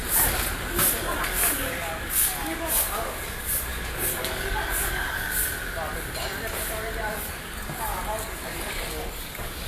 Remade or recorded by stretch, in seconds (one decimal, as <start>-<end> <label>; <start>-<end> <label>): 0.0-0.6 recorded; 0.6-5.4 remade; 5.4-7.1 recorded; 7.1-9.7 remade